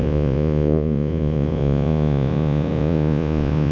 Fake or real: fake